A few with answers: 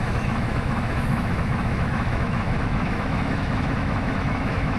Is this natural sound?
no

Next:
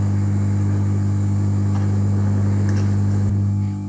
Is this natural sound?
yes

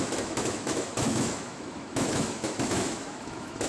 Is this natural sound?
no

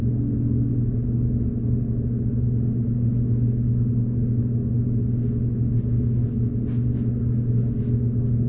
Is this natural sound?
yes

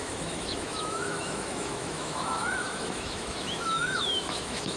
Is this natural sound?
no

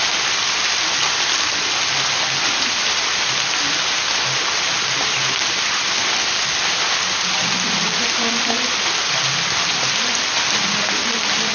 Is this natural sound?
yes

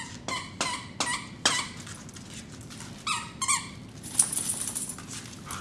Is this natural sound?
yes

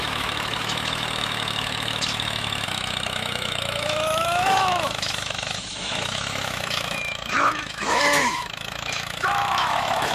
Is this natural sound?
no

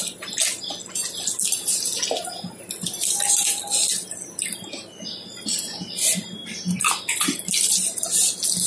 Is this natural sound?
yes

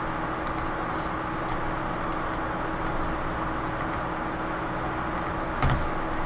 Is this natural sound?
yes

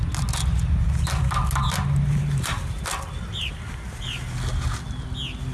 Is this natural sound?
yes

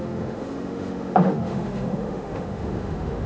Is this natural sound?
no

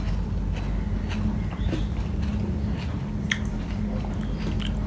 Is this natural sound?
yes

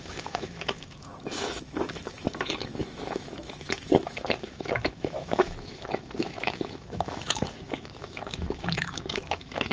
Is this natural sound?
no